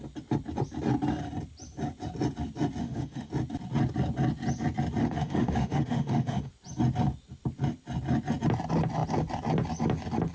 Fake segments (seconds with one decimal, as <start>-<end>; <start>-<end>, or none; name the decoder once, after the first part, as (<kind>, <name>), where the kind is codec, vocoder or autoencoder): 2.8-3.3 (autoencoder, DAC-VAE); 5.0-6.5